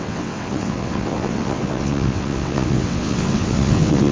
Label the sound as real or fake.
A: fake